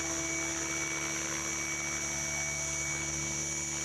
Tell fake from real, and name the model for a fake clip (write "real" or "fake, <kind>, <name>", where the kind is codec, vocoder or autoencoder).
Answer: real